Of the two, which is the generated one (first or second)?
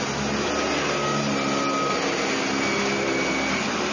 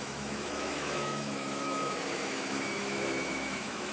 second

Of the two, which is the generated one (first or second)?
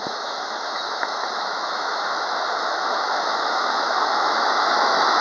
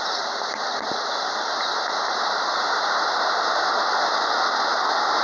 first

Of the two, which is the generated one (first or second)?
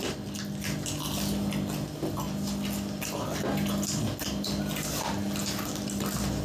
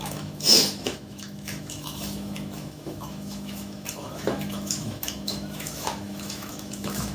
second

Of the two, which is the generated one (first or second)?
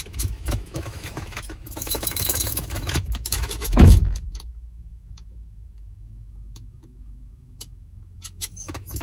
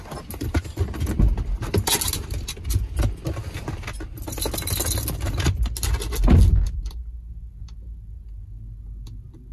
first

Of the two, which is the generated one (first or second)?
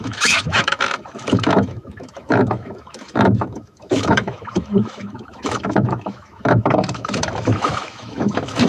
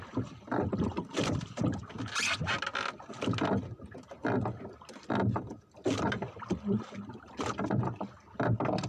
first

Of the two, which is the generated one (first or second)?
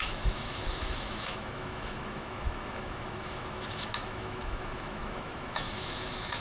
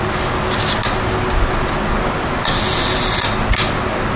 first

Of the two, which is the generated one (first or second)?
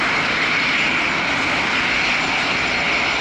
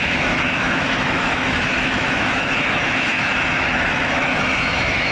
second